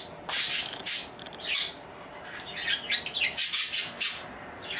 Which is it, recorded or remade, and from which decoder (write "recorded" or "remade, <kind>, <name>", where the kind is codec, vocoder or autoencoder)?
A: recorded